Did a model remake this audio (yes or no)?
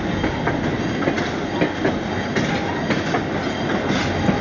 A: no